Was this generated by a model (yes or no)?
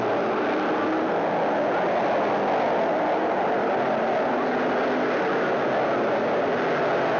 no